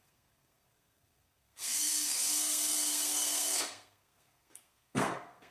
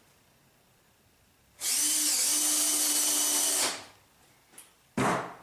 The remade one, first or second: first